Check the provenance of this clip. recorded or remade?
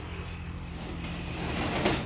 recorded